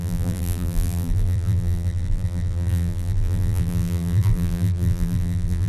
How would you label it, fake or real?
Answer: fake